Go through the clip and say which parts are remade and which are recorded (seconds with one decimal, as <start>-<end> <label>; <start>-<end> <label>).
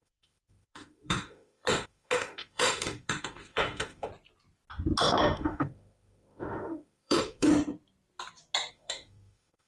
0.0-4.1 remade; 4.1-5.0 recorded; 5.0-7.5 remade; 7.5-8.7 recorded; 8.7-9.7 remade